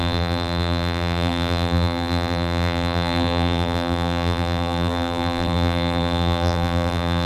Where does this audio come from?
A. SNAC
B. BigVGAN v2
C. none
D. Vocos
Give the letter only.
B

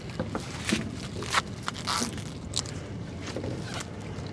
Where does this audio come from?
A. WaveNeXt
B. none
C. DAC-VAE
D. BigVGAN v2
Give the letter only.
B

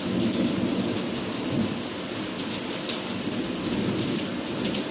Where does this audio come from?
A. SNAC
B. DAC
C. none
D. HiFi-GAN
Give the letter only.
C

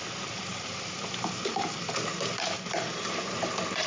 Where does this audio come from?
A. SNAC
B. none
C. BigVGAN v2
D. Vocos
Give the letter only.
C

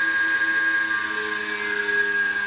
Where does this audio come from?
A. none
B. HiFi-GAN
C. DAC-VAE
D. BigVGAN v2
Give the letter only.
A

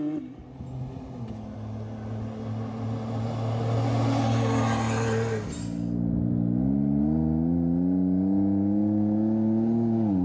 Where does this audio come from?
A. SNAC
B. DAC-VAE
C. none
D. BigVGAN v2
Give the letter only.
C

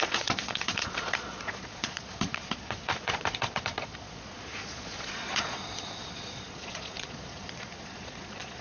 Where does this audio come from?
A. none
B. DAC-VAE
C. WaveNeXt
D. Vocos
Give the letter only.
D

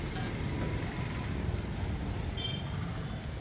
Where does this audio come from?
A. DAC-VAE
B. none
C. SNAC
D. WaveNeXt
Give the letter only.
B